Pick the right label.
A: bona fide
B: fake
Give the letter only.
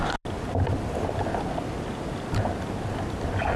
A